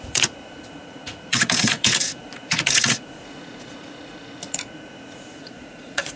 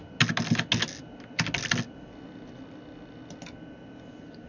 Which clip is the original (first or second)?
second